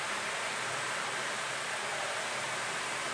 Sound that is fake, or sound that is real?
real